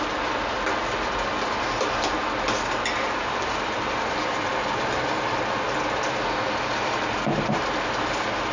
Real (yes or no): yes